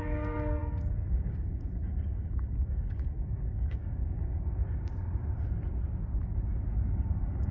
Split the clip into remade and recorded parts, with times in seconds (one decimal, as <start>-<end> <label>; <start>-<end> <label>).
0.0-4.6 remade; 4.6-7.1 recorded; 7.1-7.5 remade